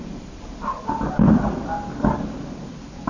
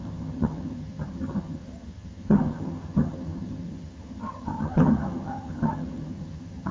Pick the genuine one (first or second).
first